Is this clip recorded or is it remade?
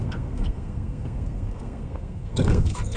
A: remade